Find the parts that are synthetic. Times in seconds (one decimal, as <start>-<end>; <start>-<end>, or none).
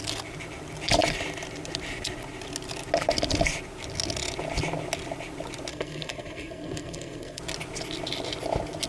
5.7-7.4